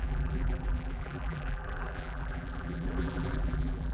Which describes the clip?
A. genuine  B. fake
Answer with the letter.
B